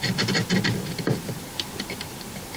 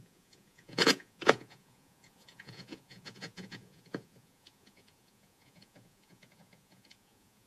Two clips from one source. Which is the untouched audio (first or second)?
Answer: first